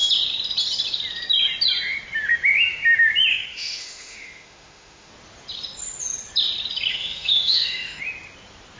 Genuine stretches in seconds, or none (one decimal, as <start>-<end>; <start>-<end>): 0.0-3.3; 5.1-6.9; 8.0-8.8